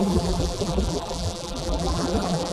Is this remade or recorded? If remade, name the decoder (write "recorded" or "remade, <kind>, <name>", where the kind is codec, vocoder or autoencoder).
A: remade, vocoder, BigVGAN v2